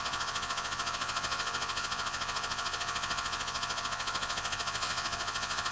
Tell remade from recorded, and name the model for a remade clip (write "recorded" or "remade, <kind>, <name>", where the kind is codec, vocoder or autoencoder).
remade, vocoder, Vocos